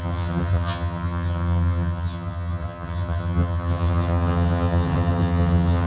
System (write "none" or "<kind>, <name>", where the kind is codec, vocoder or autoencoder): vocoder, HiFi-GAN